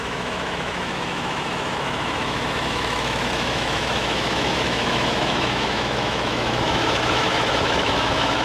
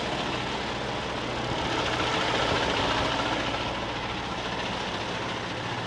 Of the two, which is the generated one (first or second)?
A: first